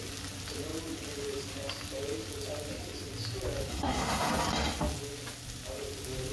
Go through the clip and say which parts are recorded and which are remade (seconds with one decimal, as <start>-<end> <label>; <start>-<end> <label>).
0.0-3.7 recorded; 3.7-4.3 remade; 4.3-6.3 recorded